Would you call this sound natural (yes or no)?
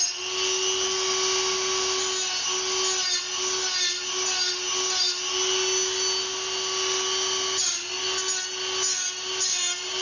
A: yes